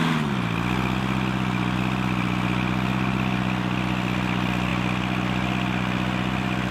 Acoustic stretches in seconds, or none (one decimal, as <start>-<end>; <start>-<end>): 0.0-6.7